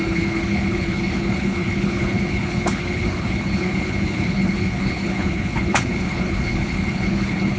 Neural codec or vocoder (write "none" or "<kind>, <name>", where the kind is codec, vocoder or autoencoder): codec, HILCodec